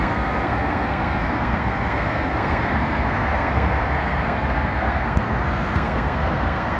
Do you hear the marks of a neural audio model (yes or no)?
yes